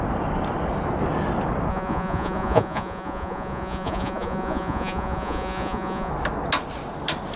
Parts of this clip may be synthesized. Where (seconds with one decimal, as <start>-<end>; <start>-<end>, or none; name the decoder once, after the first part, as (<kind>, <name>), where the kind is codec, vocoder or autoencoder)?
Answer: 1.7-6.1 (vocoder, Vocos)

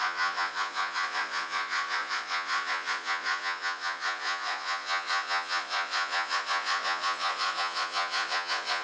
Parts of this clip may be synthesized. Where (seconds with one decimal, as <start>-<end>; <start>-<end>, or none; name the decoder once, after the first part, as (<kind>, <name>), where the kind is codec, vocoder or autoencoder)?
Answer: 0.0-8.8 (vocoder, Vocos)

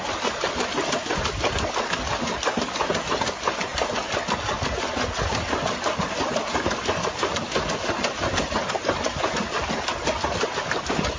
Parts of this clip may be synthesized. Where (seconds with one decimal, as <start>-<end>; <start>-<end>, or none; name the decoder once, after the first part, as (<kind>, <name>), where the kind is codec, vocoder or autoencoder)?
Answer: none

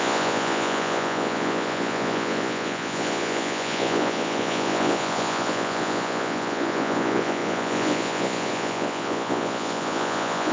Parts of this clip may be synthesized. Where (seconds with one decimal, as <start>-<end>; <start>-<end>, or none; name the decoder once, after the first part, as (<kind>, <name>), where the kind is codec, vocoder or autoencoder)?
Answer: 0.0-10.5 (vocoder, Vocos)

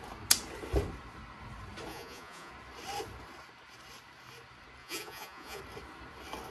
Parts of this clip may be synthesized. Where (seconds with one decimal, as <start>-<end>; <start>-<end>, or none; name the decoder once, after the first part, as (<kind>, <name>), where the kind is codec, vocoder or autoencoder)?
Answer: 1.9-2.5 (vocoder, Vocos); 4.8-5.6